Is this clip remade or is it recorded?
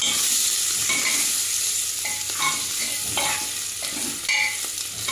recorded